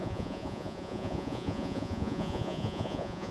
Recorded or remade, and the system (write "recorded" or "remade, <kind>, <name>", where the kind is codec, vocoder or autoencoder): remade, vocoder, Vocos